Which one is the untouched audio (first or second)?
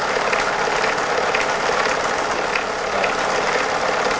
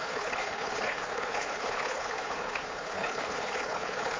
first